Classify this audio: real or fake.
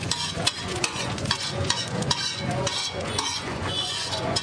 fake